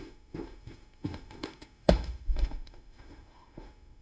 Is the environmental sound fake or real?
fake